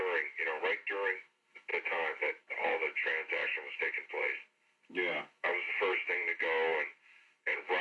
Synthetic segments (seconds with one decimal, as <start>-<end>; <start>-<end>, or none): none